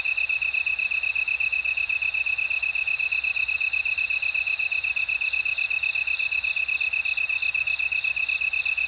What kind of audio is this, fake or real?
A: real